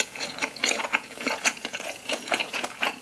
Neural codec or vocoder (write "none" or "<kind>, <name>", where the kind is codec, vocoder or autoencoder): vocoder, Vocos